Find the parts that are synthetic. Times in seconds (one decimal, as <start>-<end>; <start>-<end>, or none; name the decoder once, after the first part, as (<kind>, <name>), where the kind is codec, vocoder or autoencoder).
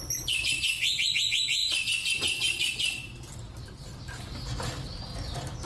none